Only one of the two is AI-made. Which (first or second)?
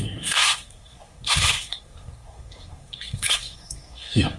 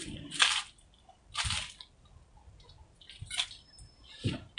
first